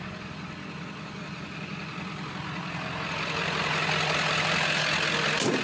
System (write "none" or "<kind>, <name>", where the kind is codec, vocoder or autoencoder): none